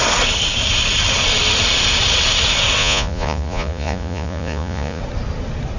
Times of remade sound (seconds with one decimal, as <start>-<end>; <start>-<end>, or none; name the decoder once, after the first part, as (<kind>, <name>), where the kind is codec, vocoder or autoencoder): 2.8-5.0 (vocoder, Vocos)